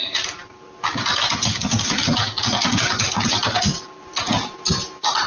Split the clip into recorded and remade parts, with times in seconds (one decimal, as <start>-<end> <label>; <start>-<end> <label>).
0.0-5.3 recorded